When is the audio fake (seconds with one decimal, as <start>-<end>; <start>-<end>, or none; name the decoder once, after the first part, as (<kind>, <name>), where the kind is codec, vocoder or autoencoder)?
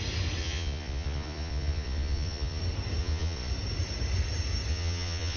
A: 0.4-2.6 (vocoder, Vocos); 3.0-3.5; 4.7-5.4